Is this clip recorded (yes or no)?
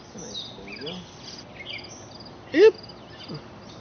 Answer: yes